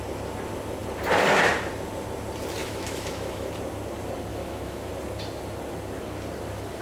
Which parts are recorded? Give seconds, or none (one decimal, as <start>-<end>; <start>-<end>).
0.0-2.6; 3.5-4.3; 4.9-6.8